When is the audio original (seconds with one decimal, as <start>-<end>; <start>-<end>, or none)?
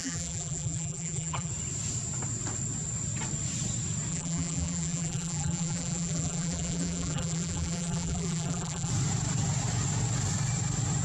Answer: 1.5-4.1; 8.9-11.0